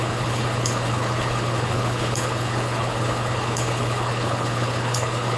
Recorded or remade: remade